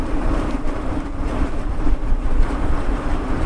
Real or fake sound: fake